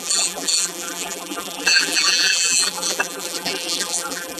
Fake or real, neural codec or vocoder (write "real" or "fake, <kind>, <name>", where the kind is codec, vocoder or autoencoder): fake, vocoder, BigVGAN v2